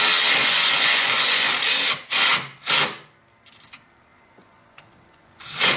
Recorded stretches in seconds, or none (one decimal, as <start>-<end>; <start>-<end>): 0.0-0.4; 1.5-4.1